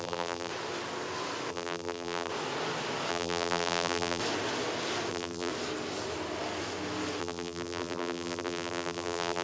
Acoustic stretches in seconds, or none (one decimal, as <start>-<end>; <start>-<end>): 0.5-1.5; 2.3-3.1; 4.2-5.1; 5.5-7.2